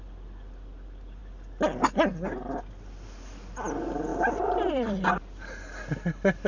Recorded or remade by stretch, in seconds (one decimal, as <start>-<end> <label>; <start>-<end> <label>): 0.0-4.1 recorded; 4.1-5.2 remade; 5.2-6.5 recorded